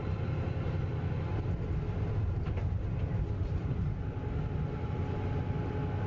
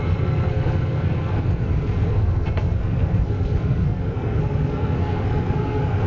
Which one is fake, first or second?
second